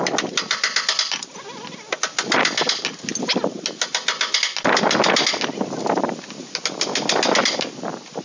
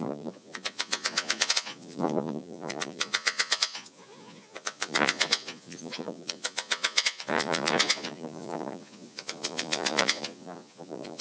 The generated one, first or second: second